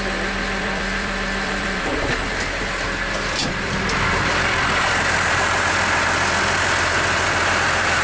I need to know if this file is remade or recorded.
remade